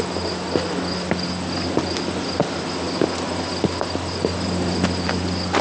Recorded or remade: recorded